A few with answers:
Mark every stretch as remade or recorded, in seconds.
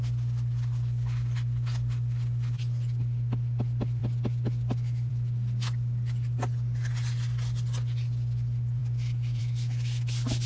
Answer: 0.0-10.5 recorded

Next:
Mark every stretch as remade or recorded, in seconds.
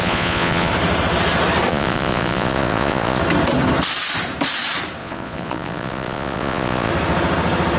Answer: 0.0-0.7 remade; 0.7-1.7 recorded; 1.7-3.2 remade; 3.2-5.0 recorded; 5.0-6.9 remade; 6.9-7.8 recorded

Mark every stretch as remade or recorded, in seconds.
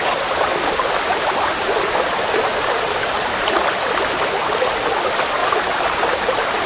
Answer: 0.0-0.5 remade; 0.5-3.4 recorded; 3.4-6.7 remade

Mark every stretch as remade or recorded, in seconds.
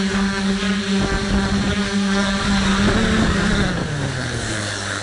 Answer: 0.0-0.8 remade; 0.8-1.7 recorded; 1.7-2.7 remade; 2.7-3.2 recorded; 3.2-5.0 remade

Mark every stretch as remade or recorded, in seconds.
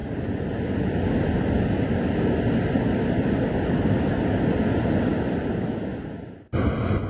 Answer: 0.0-2.8 remade; 2.8-7.1 recorded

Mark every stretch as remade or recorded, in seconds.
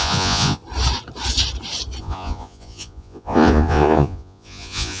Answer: 0.0-0.6 remade; 0.6-2.0 recorded; 2.0-5.0 remade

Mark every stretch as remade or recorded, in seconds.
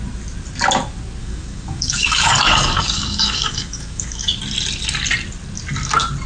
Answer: 0.0-1.2 recorded; 1.2-4.4 remade; 4.4-6.3 recorded